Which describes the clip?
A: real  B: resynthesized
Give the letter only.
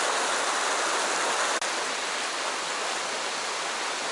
A